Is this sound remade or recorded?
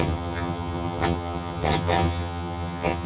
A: remade